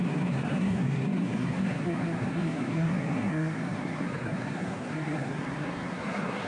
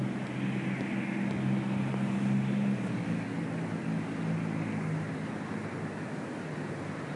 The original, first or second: second